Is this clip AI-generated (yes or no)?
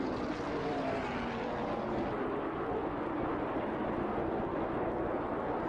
no